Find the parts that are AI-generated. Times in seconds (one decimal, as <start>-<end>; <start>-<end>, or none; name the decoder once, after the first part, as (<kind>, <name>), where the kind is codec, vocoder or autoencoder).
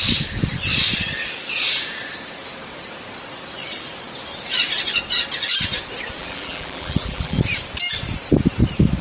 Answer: 6.2-7.4 (vocoder, BigVGAN v2)